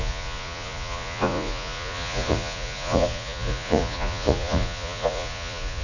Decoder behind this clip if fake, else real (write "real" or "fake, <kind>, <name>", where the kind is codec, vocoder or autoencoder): fake, vocoder, Vocos